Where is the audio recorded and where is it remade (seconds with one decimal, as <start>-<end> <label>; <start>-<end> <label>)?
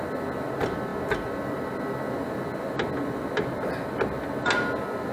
0.0-5.1 recorded